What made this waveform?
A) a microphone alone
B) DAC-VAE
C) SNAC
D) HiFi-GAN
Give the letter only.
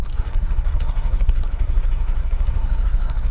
C